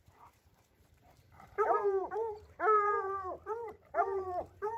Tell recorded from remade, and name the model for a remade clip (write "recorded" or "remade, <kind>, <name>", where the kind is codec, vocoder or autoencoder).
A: remade, vocoder, BigVGAN v2